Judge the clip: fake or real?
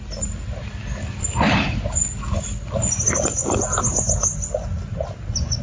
real